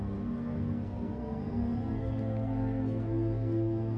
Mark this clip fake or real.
fake